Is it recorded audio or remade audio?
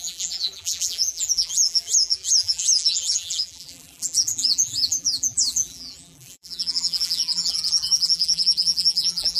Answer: remade